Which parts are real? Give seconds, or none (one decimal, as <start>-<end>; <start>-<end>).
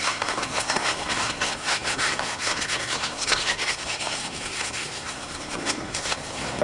none